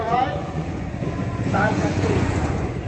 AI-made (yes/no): yes